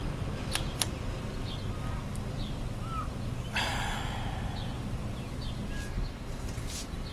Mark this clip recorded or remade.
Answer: recorded